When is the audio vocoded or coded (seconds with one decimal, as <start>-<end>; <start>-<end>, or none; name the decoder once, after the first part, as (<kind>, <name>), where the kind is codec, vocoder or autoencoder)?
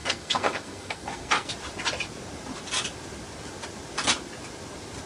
0.0-1.5 (codec, SNAC)